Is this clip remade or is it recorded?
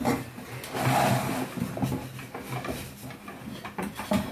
recorded